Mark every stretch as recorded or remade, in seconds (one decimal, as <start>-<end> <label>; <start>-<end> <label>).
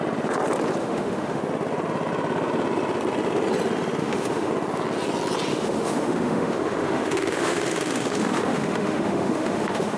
0.0-0.8 recorded; 0.8-1.4 remade; 1.4-4.0 recorded; 4.0-4.5 remade; 4.5-5.5 recorded; 5.5-10.0 remade